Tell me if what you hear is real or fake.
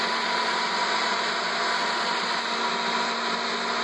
real